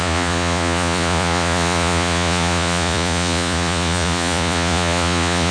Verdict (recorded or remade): remade